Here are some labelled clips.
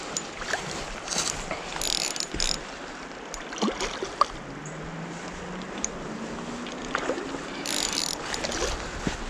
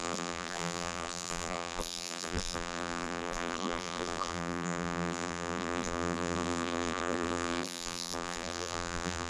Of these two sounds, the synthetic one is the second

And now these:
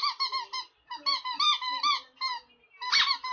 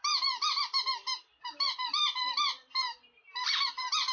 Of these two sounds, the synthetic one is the second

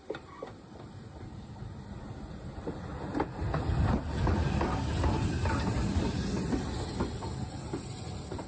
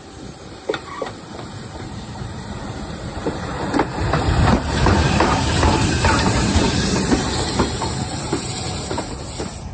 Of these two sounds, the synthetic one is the second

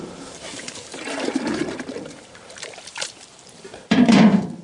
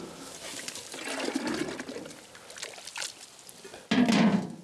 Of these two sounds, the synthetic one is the first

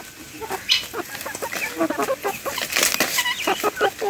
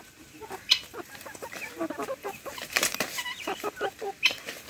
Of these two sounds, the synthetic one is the second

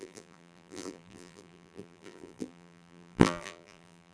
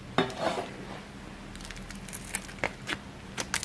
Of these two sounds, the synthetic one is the first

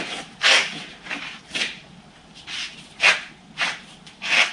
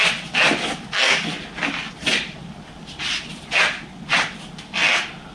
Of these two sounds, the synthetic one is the first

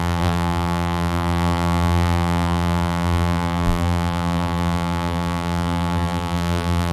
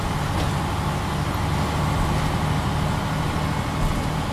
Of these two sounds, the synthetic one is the first